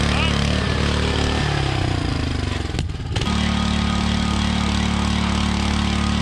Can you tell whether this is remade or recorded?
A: recorded